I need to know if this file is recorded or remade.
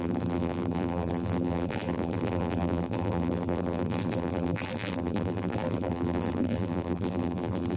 remade